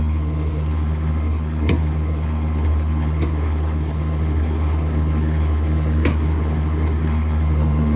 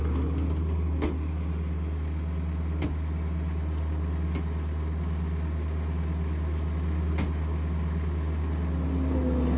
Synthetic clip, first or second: first